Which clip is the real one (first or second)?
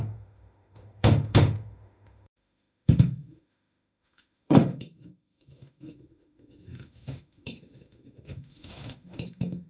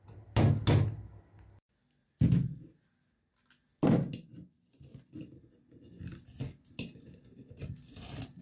second